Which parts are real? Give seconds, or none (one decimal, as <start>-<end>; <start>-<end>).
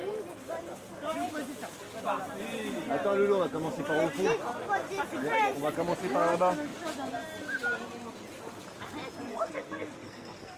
0.0-9.3